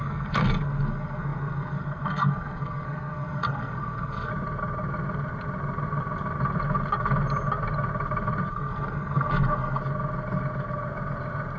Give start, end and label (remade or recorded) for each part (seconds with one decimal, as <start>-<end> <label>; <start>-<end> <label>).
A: 0.0-4.3 remade; 4.3-8.5 recorded; 8.5-9.8 remade; 9.8-11.6 recorded